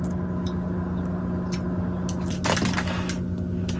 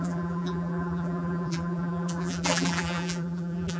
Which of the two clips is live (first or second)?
first